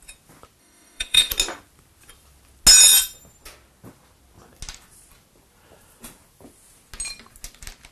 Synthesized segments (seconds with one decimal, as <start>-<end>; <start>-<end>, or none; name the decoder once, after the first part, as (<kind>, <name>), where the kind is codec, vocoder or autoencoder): 0.6-1.3 (autoencoder, DAC-VAE)